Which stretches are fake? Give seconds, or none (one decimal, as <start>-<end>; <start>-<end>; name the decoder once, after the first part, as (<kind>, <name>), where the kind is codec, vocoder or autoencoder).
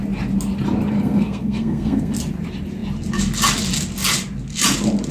0.9-2.1 (codec, SNAC)